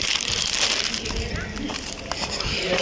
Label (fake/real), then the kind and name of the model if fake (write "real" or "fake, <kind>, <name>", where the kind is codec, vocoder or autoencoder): real